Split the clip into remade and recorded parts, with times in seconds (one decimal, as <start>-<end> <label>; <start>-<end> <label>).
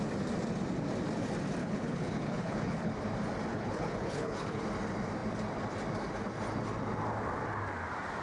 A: 0.0-1.6 recorded; 1.6-2.9 remade; 2.9-3.5 recorded; 3.5-4.6 remade; 4.6-8.2 recorded